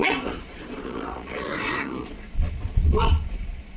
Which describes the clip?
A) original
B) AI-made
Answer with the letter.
B